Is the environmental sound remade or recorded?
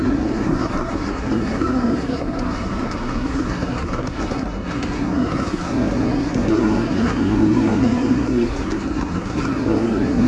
remade